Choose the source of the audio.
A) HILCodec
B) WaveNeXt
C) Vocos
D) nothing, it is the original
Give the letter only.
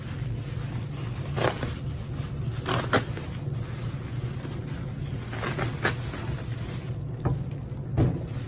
D